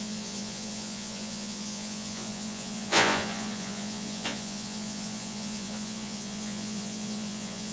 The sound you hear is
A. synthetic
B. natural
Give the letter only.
A